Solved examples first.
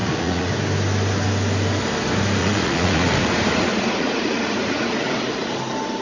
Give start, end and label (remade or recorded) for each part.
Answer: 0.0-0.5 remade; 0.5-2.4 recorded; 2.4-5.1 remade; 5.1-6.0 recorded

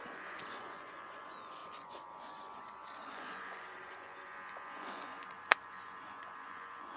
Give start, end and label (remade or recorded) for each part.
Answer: 0.0-7.0 remade

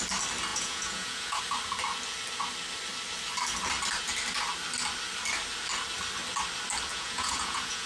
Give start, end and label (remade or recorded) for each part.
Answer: 0.0-0.5 recorded; 0.5-1.4 remade; 1.4-6.9 recorded; 6.9-7.9 remade

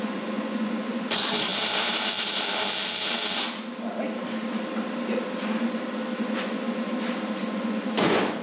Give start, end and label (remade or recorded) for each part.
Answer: 0.0-1.5 remade; 1.5-6.2 recorded; 6.2-6.9 remade; 6.9-7.4 recorded; 7.4-8.4 remade

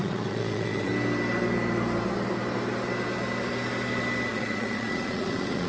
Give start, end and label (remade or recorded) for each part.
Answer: 0.0-0.9 remade; 0.9-4.3 recorded; 4.3-5.7 remade

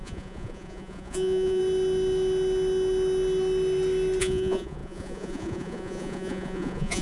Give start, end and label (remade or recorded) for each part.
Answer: 0.0-1.6 remade; 1.6-4.2 recorded; 4.2-7.0 remade

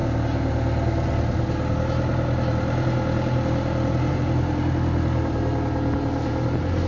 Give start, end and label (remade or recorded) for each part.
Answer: 0.0-6.9 recorded